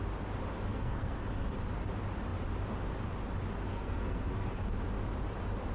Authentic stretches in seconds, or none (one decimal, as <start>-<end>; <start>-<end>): 0.0-0.7; 1.2-3.7; 4.5-5.7